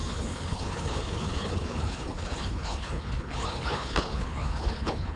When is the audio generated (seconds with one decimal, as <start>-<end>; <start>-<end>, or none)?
0.0-5.2